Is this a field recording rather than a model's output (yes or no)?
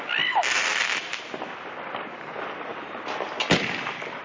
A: yes